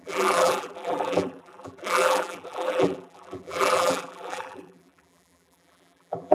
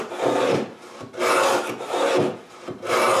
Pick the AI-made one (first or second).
first